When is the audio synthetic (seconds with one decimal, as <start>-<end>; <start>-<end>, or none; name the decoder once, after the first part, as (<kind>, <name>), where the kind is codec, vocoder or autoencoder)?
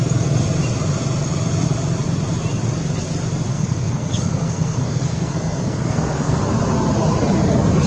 3.5-6.4 (codec, SNAC)